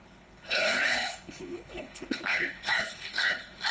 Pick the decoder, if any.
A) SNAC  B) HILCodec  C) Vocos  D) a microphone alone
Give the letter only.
B